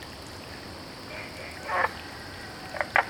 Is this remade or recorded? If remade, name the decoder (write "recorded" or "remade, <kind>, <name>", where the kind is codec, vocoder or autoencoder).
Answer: recorded